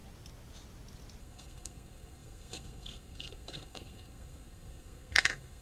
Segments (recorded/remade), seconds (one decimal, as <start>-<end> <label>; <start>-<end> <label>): 0.0-1.2 recorded; 1.2-5.6 remade